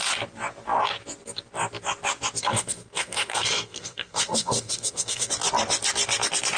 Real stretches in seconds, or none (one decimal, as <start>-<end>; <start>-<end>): 0.0-2.4; 5.3-6.6